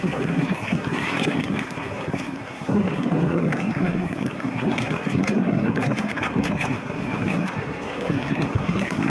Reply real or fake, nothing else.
fake